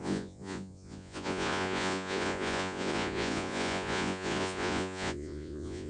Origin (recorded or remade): remade